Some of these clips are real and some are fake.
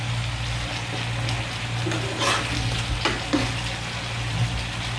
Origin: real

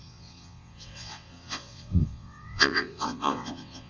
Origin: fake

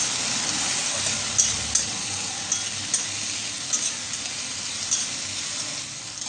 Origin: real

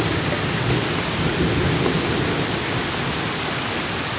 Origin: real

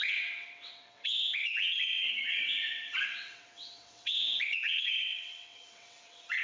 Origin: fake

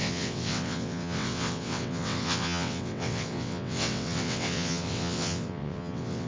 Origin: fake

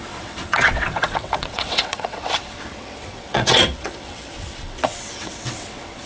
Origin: fake